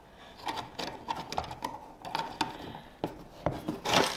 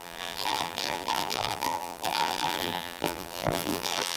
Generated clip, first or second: second